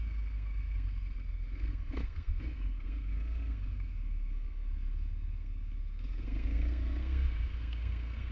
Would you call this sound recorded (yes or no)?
no